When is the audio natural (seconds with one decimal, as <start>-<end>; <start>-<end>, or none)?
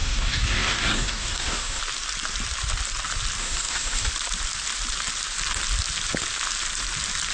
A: 1.8-3.4; 4.1-7.3